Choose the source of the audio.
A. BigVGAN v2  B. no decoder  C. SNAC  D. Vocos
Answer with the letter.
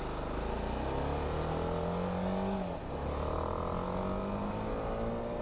B